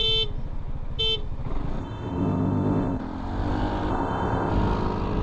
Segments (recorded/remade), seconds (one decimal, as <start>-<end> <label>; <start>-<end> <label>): 0.0-1.8 recorded; 1.8-3.0 remade; 3.0-3.9 recorded; 3.9-4.5 remade; 4.5-5.2 recorded